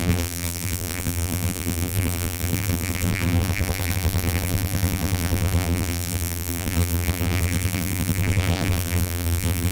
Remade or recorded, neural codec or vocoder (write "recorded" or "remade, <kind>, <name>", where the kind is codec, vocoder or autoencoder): remade, vocoder, BigVGAN v2